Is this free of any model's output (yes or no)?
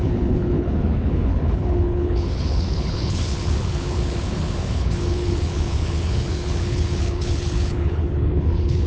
no